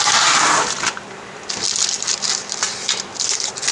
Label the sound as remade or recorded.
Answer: recorded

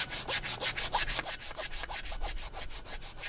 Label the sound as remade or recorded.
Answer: recorded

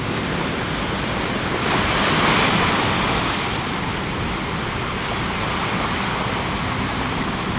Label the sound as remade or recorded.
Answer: recorded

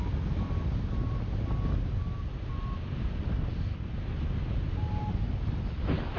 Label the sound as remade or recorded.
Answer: recorded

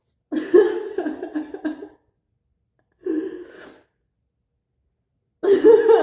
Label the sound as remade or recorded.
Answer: recorded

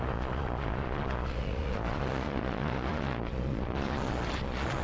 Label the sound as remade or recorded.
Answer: remade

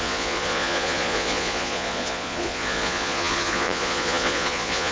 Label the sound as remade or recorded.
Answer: remade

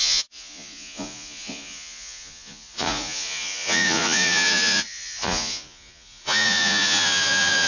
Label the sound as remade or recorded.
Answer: remade